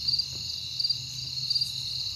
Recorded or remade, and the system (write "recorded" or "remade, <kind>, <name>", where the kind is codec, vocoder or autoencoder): recorded